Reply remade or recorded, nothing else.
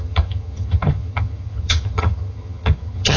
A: remade